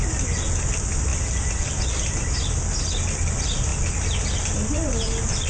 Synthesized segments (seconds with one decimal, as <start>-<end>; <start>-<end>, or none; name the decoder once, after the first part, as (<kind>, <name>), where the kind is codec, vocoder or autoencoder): none